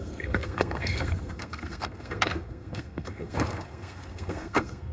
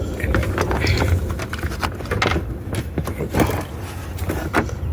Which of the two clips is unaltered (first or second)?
second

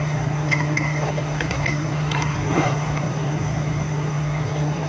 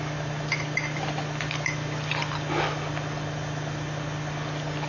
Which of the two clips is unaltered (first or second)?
second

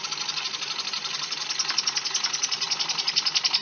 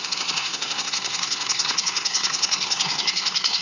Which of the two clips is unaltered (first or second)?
first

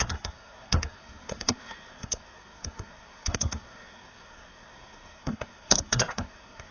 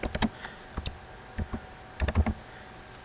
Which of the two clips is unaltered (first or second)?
second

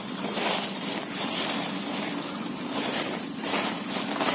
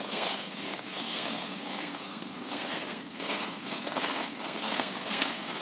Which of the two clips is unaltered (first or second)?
first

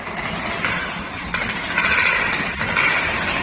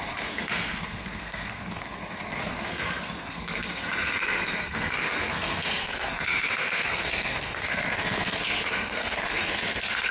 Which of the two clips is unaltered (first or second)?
first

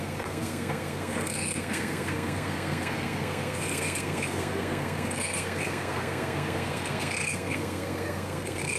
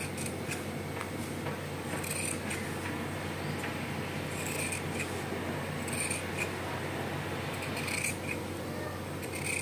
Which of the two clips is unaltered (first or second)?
second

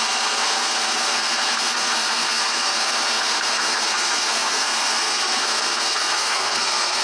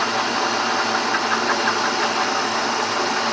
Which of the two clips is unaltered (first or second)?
second